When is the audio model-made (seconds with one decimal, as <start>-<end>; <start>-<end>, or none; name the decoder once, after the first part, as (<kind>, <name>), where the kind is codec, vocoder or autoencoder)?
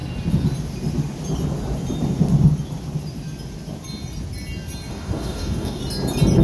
4.9-5.8 (codec, DAC)